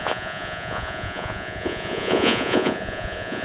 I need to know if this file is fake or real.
fake